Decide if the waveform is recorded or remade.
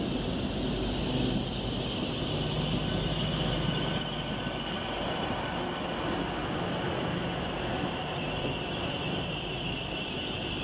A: recorded